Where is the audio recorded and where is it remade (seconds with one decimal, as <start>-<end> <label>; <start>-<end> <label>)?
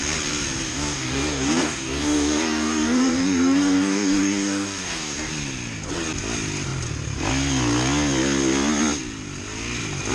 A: 0.0-0.7 recorded; 0.7-5.3 remade; 5.3-10.1 recorded